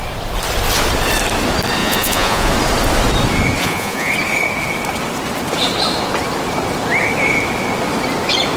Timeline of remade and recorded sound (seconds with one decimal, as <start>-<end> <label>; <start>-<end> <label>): 0.0-1.8 recorded; 1.8-2.5 remade; 2.5-3.6 recorded; 3.6-4.1 remade; 4.1-8.6 recorded